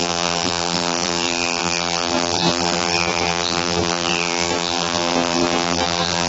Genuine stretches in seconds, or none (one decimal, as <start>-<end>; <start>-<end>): none